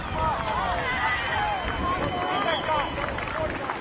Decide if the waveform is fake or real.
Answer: real